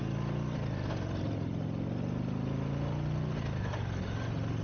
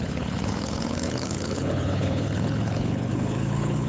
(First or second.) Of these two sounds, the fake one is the second